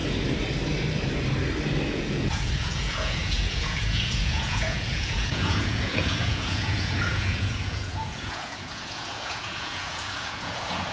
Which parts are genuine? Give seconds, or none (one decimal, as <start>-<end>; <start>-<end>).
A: 0.0-1.9